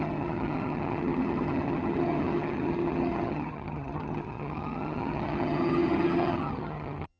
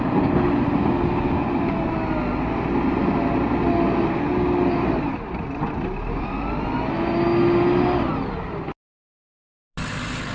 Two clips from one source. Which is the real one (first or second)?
second